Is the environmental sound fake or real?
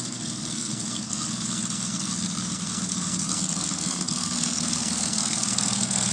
fake